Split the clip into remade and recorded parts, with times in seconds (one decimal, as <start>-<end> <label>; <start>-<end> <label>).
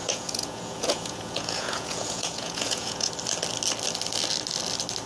0.0-3.1 remade; 3.1-5.1 recorded